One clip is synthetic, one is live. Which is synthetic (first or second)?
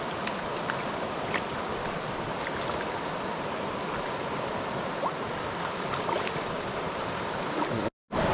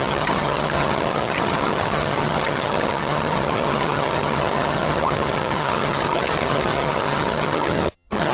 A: second